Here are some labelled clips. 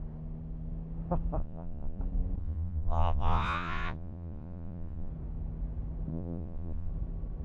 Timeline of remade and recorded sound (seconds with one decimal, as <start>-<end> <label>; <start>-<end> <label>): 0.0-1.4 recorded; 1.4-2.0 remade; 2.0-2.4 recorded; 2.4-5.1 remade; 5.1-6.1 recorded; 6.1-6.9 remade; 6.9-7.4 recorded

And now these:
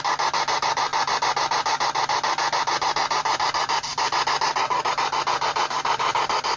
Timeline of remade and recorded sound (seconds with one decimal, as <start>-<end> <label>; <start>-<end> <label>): 0.0-6.6 recorded

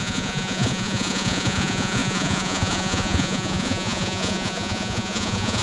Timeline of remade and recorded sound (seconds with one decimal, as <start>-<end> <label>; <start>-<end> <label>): 0.0-5.6 remade

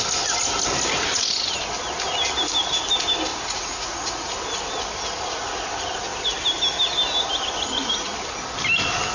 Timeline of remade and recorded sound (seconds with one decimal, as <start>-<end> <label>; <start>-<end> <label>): 0.0-3.3 recorded; 3.3-4.3 remade; 4.3-9.1 recorded

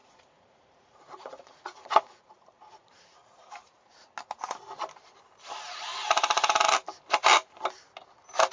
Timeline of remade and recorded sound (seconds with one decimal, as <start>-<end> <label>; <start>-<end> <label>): 0.0-4.1 remade; 4.1-8.5 recorded

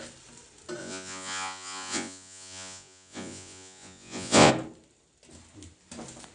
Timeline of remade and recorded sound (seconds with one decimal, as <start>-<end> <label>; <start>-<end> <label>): 0.0-0.8 recorded; 0.8-4.5 remade; 4.5-6.3 recorded

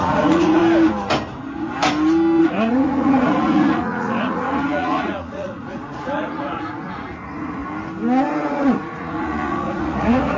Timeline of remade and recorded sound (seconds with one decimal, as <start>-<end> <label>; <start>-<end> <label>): 0.0-0.6 remade; 0.6-2.4 recorded; 2.4-7.6 remade; 7.6-8.4 recorded; 8.4-10.4 remade